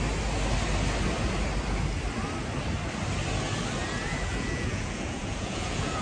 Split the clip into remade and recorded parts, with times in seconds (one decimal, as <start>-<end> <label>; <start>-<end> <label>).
0.0-3.8 recorded; 3.8-6.0 remade